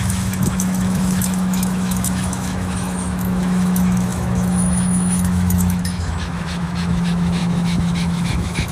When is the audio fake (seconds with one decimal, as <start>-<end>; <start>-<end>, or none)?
0.0-8.7